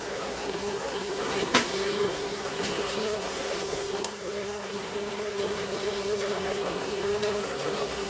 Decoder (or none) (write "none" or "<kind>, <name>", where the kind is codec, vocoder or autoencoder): codec, SNAC